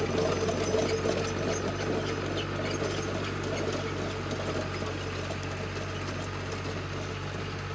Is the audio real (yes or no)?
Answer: yes